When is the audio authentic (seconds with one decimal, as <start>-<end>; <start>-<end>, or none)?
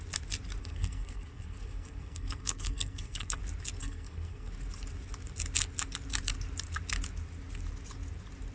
0.0-0.6; 3.4-3.8; 4.5-8.5